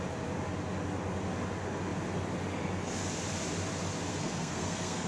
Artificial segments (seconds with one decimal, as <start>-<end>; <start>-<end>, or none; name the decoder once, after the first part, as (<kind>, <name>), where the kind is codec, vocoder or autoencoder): 4.1-5.1 (codec, SNAC)